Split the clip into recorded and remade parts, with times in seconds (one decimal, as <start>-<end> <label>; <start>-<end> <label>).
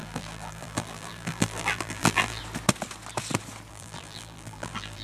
0.0-2.4 remade; 2.4-3.7 recorded; 3.7-5.0 remade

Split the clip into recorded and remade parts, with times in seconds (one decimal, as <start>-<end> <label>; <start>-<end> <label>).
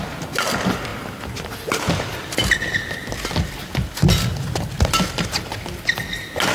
0.0-6.5 recorded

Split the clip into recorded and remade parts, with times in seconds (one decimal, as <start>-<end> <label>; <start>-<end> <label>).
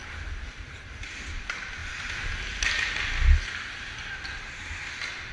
0.0-5.3 recorded